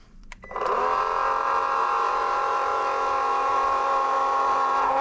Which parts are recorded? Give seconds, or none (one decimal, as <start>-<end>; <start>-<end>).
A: none